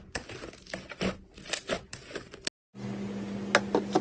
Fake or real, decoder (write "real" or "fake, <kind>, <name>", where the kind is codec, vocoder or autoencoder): real